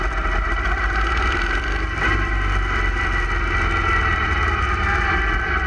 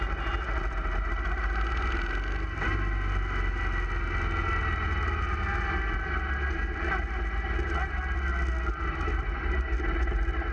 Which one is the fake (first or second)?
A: first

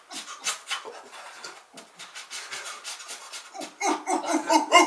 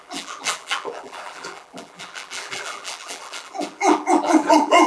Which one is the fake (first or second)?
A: second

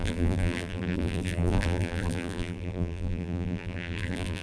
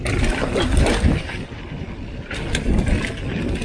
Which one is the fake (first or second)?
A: first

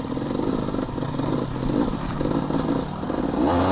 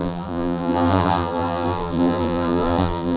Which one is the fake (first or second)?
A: second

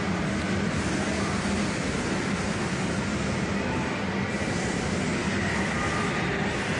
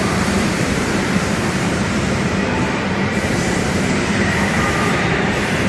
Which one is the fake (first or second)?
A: second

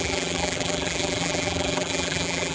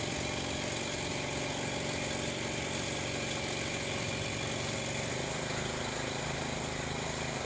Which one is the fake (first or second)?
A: first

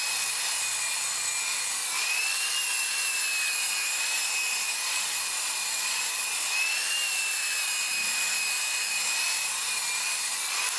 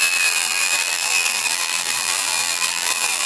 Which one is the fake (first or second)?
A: second